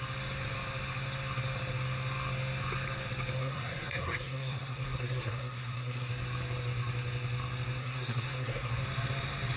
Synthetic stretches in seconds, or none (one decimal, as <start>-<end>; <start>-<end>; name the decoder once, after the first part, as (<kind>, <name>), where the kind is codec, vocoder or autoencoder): 3.4-6.1 (codec, SNAC); 7.8-8.8